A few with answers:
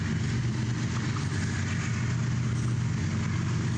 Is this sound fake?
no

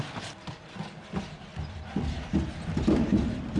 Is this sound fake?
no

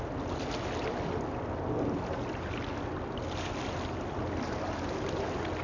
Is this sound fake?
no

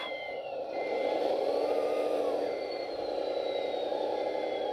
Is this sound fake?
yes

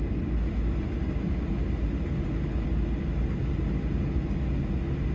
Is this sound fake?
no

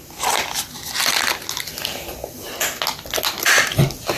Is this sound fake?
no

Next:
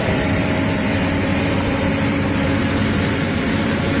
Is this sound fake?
yes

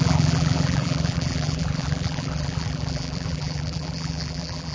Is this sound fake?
yes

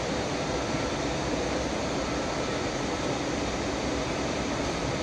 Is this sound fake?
yes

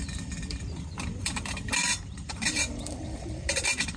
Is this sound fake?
yes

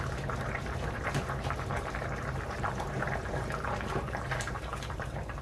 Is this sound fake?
yes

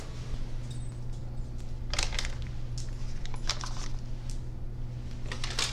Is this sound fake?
no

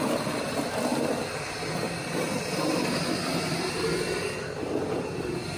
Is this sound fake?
no